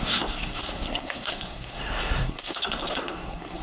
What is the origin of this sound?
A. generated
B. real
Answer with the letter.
A